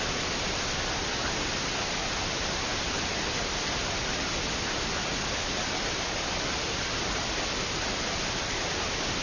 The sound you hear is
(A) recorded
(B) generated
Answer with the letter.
A